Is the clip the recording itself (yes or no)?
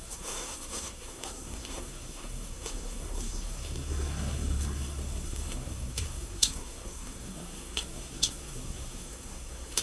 no